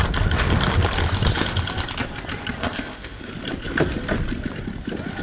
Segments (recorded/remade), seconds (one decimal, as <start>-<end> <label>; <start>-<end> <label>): 0.0-2.6 recorded; 2.6-3.3 remade; 3.3-5.2 recorded